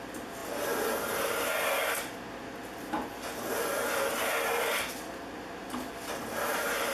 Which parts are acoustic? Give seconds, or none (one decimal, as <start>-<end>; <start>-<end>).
0.0-6.9